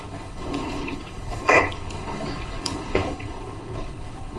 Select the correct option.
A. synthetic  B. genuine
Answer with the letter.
A